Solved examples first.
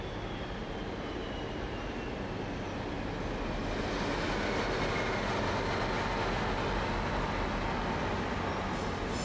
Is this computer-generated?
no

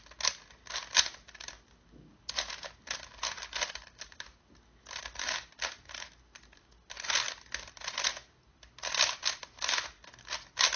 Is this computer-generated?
no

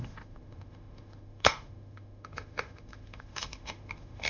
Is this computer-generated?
yes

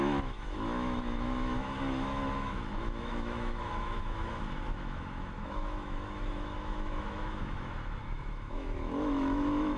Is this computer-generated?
yes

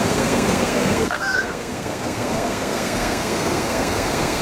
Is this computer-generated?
yes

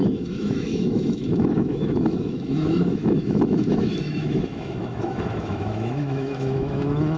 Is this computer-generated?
yes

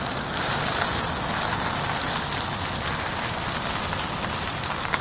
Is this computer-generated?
no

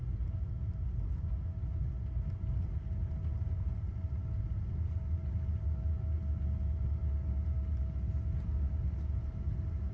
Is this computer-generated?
no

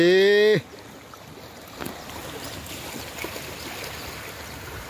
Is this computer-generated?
no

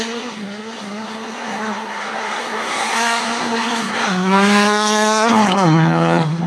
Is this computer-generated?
yes